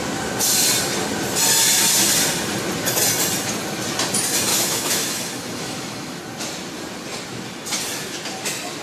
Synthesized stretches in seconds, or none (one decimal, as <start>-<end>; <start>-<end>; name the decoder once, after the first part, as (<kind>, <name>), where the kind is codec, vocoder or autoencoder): 4.5-6.2 (autoencoder, DAC-VAE)